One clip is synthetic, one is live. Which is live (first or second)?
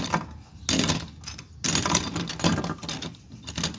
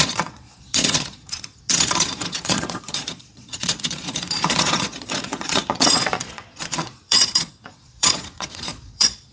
first